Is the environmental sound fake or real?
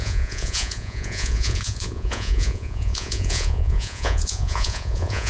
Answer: fake